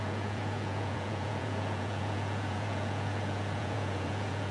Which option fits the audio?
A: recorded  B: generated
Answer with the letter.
B